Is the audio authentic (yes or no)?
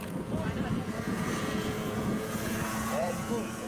no